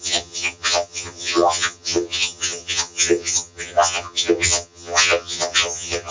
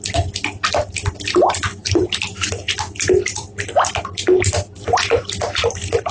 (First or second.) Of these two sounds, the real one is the second